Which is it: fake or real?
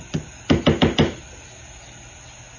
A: real